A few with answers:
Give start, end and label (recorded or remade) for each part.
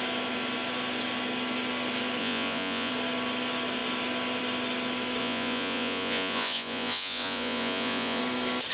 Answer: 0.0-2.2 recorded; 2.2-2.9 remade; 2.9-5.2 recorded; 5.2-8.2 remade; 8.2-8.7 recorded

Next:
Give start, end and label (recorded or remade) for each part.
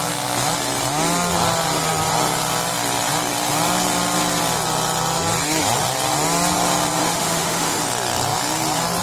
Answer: 0.0-7.0 recorded; 7.0-7.8 remade; 7.8-9.0 recorded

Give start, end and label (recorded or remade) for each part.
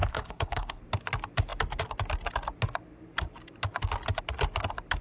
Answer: 0.0-0.8 remade; 0.8-5.0 recorded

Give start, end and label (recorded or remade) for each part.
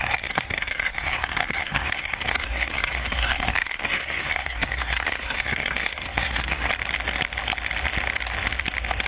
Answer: 0.0-6.7 remade; 6.7-9.1 recorded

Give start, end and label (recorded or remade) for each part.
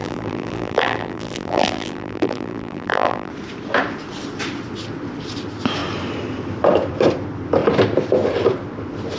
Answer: 0.0-3.3 remade; 3.3-9.2 recorded